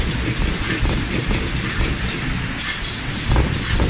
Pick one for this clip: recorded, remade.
recorded